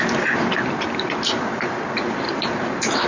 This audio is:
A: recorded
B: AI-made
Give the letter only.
A